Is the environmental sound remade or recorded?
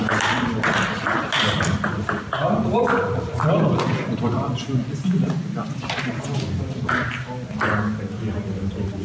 recorded